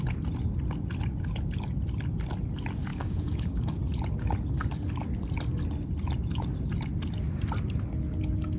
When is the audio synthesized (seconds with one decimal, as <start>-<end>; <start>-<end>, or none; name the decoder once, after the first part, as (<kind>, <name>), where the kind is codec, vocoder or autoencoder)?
2.9-3.8 (codec, DAC)